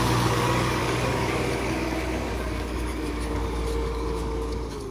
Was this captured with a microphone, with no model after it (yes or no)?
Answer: no